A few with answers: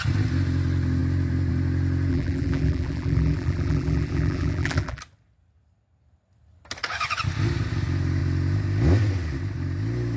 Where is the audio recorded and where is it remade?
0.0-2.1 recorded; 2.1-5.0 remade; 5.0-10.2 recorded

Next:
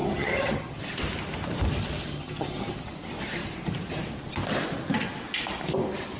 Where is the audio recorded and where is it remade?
0.0-0.8 remade; 0.8-2.1 recorded; 2.1-2.9 remade; 2.9-6.2 recorded

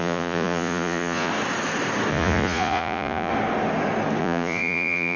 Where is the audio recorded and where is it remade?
0.0-1.3 remade; 1.3-2.1 recorded; 2.1-3.3 remade; 3.3-4.2 recorded; 4.2-5.2 remade

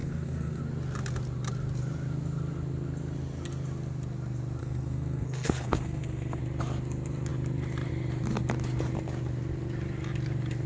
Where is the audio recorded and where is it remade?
0.0-0.6 remade; 0.6-4.6 recorded; 4.6-6.4 remade; 6.4-10.7 recorded

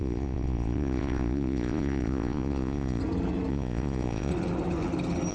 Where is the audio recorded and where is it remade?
0.0-3.0 remade; 3.0-3.5 recorded; 3.5-4.3 remade; 4.3-5.3 recorded

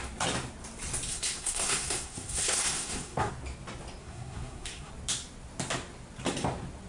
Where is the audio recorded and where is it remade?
0.0-1.1 recorded; 1.1-3.3 remade; 3.3-4.0 recorded; 4.0-4.9 remade; 4.9-6.9 recorded

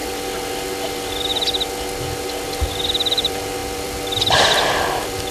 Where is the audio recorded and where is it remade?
0.0-0.9 recorded; 0.9-1.3 remade; 1.3-3.1 recorded; 3.1-5.3 remade